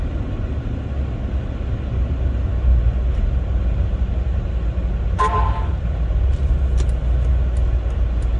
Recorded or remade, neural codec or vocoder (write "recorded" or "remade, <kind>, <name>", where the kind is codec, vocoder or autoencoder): recorded